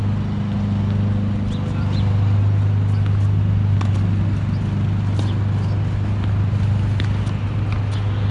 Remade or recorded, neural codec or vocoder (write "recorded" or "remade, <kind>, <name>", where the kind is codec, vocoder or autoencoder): recorded